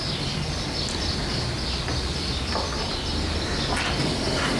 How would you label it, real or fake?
real